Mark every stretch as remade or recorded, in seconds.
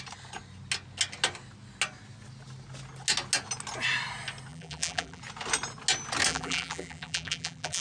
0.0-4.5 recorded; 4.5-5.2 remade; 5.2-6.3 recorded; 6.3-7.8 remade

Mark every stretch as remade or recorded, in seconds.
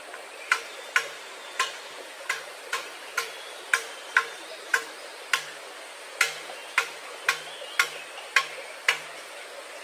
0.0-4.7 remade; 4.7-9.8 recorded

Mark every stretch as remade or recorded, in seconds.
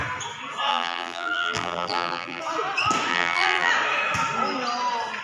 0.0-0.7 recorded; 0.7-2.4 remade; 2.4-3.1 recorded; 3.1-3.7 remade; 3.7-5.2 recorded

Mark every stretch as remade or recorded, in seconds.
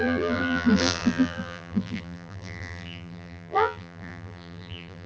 0.0-5.1 remade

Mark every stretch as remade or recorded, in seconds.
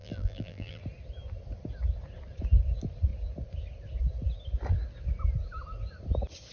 0.0-0.8 remade; 0.8-6.5 recorded